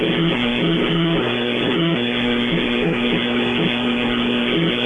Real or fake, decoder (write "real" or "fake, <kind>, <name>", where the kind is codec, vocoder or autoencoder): fake, codec, SNAC